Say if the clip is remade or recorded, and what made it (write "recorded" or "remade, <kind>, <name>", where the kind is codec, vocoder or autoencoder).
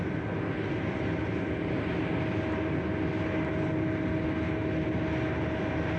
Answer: recorded